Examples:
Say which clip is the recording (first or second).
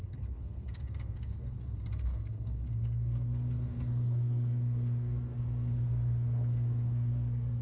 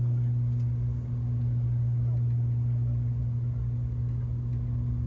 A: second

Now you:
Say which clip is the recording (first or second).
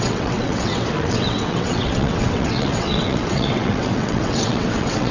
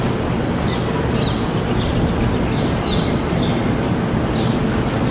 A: second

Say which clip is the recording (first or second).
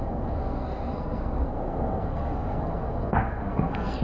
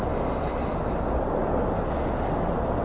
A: second